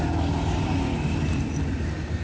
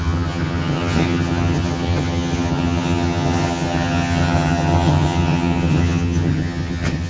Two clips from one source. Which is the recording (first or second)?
first